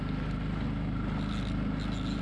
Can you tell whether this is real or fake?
real